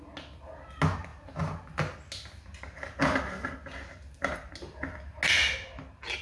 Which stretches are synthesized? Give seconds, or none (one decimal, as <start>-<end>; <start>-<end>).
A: none

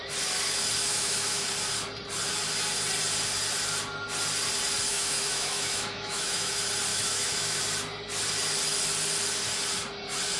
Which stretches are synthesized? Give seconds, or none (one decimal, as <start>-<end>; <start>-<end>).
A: 0.9-1.5; 4.9-6.5; 6.9-7.6